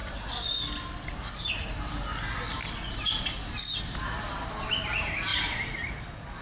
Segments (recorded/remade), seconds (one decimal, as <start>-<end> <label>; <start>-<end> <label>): 0.0-5.3 recorded; 5.3-5.9 remade; 5.9-6.4 recorded